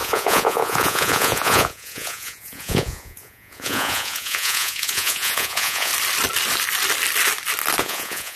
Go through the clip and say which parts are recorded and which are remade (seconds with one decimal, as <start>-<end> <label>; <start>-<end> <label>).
0.0-5.9 remade; 5.9-7.8 recorded; 7.8-8.4 remade